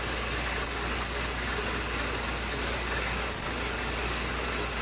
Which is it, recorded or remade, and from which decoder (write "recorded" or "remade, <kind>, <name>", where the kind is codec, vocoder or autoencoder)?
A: recorded